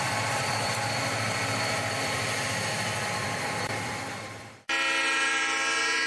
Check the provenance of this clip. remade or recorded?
remade